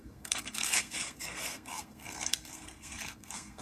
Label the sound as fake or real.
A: fake